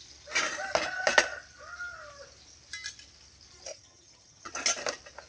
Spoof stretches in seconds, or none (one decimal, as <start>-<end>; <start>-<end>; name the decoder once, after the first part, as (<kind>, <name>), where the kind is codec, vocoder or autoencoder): 3.7-4.5 (vocoder, HiFi-GAN)